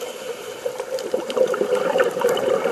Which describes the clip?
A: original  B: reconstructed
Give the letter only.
B